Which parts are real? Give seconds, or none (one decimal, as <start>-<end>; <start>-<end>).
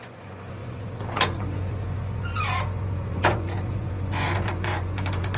none